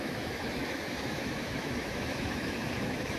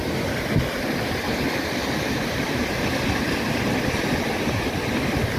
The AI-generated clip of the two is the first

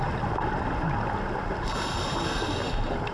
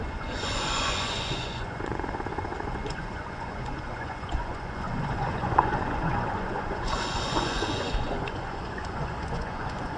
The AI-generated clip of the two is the second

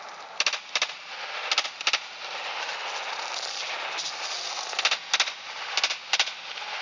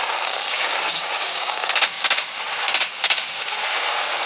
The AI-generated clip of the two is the second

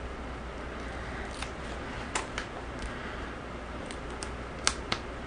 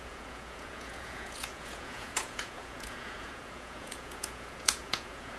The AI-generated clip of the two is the second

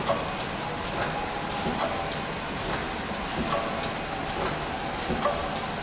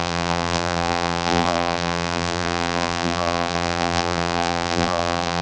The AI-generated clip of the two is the second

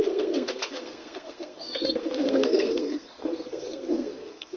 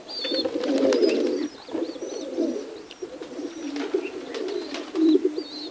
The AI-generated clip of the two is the first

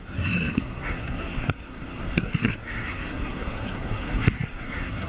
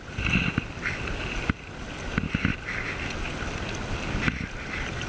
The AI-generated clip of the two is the first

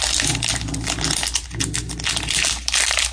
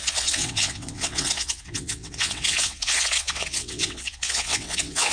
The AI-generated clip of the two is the second